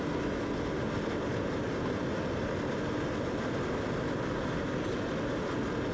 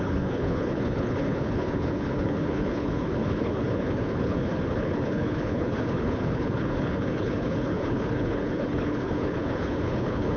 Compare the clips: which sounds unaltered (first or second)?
first